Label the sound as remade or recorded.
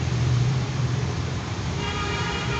remade